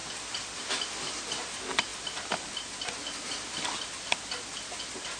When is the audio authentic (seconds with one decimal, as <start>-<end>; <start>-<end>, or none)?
0.0-5.2